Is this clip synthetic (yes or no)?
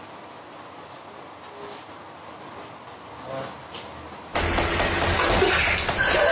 no